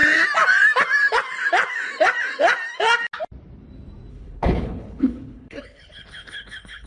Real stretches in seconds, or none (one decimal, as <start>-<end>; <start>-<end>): 0.0-4.1